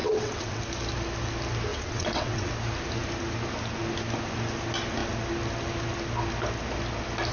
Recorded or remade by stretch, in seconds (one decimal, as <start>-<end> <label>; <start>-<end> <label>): 0.0-0.6 remade; 0.6-1.7 recorded; 1.7-2.5 remade; 2.5-7.3 recorded